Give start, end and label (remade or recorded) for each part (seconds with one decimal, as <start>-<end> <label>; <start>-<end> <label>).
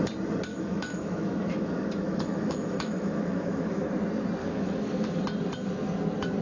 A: 0.0-0.5 recorded; 0.5-3.9 remade; 3.9-4.4 recorded; 4.4-5.2 remade; 5.2-6.4 recorded